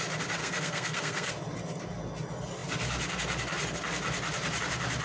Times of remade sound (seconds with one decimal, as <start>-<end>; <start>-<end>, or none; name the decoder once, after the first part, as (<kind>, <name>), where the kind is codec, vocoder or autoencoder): 0.4-1.3 (codec, SNAC)